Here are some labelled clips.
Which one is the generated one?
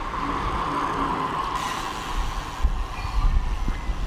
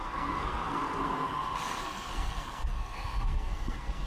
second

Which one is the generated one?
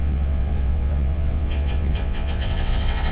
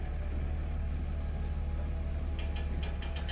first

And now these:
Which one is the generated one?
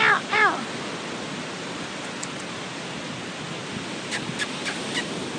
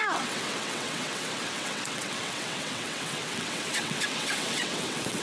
second